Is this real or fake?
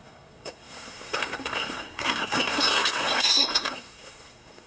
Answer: fake